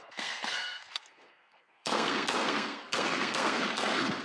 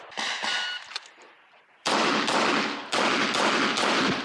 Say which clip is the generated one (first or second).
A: first